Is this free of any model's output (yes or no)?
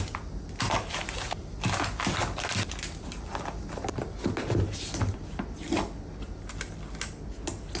yes